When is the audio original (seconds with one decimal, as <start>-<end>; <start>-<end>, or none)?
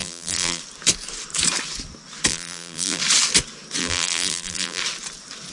0.6-2.3; 3.0-3.8; 4.8-5.5